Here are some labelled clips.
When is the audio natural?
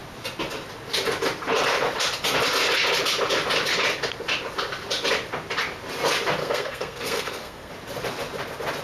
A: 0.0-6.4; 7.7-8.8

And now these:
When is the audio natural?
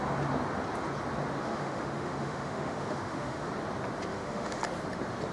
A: 0.0-1.4; 3.5-4.1; 4.6-5.3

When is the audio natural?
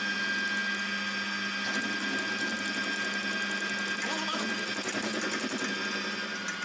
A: 0.0-6.6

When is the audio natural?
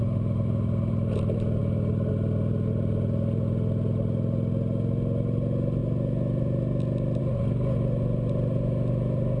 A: 0.0-9.4